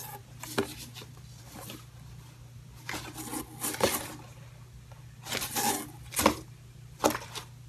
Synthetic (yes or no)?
no